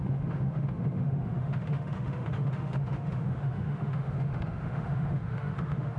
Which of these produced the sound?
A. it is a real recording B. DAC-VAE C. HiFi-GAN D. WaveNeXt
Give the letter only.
B